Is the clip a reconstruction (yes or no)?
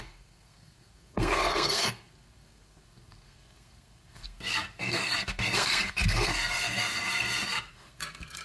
yes